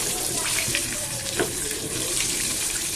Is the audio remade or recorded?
remade